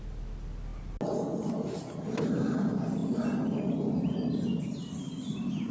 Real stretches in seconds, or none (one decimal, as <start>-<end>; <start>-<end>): 0.0-5.7